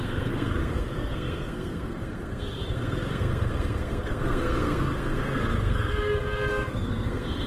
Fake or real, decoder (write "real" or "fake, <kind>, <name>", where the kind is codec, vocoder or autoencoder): fake, codec, SNAC